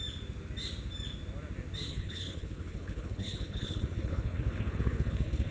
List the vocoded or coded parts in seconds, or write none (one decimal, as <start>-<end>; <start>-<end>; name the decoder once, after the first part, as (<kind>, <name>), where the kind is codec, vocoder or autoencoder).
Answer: 1.9-5.5 (codec, HILCodec)